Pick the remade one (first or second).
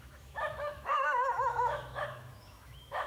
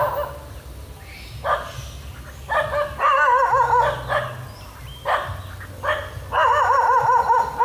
first